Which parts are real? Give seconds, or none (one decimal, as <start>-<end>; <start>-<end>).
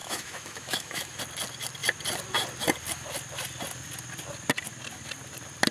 1.2-5.7